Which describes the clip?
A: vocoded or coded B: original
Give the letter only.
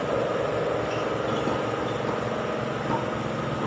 B